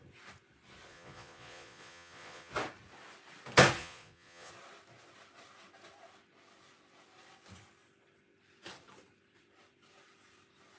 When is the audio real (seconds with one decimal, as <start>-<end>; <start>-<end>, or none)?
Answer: 0.0-0.9; 2.5-3.8; 4.5-10.8